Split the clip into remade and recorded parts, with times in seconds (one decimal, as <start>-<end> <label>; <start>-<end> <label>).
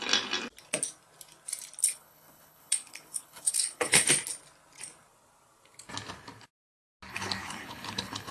0.0-1.8 recorded; 1.8-4.1 remade; 4.1-7.1 recorded; 7.1-8.3 remade